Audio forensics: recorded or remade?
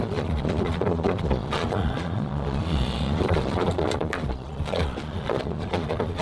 remade